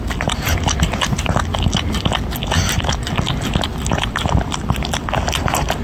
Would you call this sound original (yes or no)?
yes